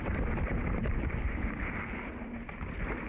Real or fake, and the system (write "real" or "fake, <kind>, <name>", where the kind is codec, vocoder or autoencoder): real